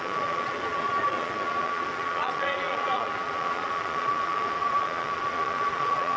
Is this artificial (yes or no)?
yes